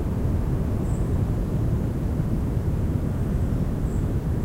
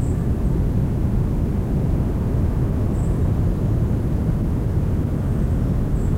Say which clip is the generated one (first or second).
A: first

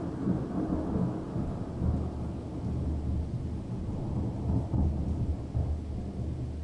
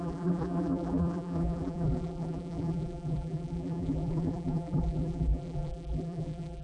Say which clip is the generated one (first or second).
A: second